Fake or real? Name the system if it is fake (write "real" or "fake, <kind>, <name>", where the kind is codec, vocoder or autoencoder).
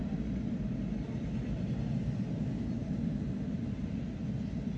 real